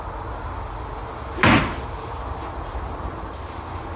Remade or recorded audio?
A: recorded